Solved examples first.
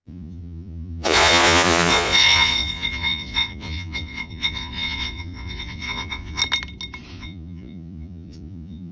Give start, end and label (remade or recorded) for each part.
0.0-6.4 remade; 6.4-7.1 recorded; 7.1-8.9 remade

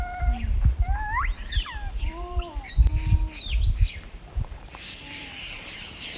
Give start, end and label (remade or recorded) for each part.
0.0-2.9 remade; 2.9-3.9 recorded; 3.9-6.2 remade

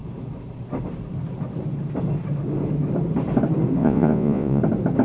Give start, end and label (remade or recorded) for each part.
0.0-3.8 recorded; 3.8-4.6 remade; 4.6-5.0 recorded

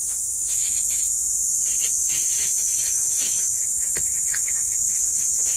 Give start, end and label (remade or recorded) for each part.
0.0-1.3 remade; 1.3-2.0 recorded; 2.0-5.6 remade

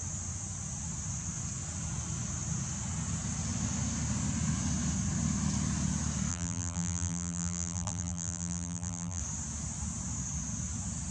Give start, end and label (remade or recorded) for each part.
0.0-6.3 recorded; 6.3-9.2 remade; 9.2-11.1 recorded

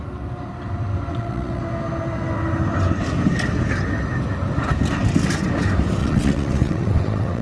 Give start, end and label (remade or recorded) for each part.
0.0-1.1 recorded; 1.1-1.6 remade; 1.6-6.0 recorded; 6.0-7.4 remade

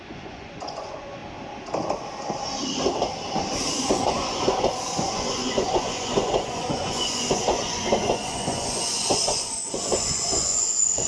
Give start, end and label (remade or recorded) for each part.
0.0-1.2 remade; 1.2-3.7 recorded; 3.7-11.1 remade

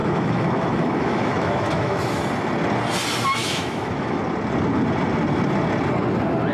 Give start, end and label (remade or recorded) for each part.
0.0-2.2 remade; 2.2-3.4 recorded; 3.4-4.2 remade; 4.2-6.5 recorded